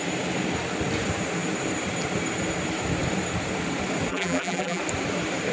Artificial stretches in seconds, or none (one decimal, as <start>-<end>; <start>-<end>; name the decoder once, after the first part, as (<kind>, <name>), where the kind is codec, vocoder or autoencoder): 4.1-4.8 (vocoder, BigVGAN v2)